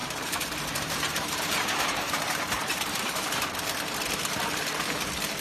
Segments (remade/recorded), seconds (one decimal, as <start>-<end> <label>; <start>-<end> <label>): 0.0-3.2 remade; 3.2-5.4 recorded